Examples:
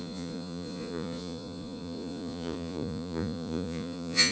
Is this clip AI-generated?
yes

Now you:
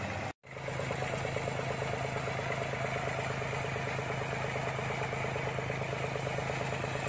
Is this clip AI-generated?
no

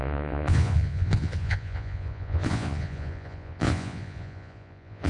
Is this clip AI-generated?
yes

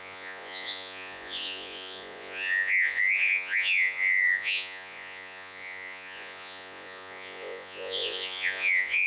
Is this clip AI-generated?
yes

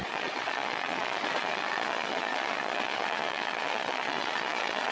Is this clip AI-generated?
yes